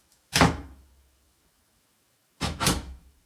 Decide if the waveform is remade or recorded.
remade